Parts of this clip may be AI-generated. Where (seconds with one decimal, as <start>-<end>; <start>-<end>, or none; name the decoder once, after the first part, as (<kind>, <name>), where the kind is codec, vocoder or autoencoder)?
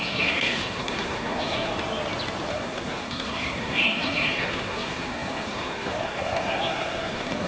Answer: 0.0-1.7 (codec, SNAC); 2.5-7.5